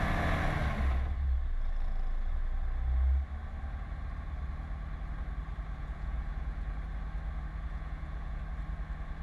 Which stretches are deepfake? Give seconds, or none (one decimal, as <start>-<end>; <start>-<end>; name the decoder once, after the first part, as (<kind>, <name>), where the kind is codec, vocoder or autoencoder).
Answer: 5.8-6.7 (vocoder, Vocos); 7.7-8.4